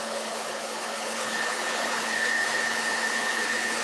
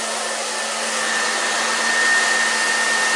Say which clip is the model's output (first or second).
first